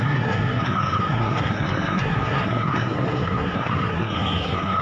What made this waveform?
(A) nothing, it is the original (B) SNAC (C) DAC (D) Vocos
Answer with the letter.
B